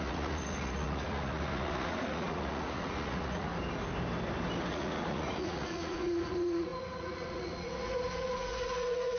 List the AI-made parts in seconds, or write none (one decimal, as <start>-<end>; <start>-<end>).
0.0-3.5; 4.7-9.2